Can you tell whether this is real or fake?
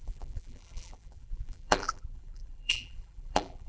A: fake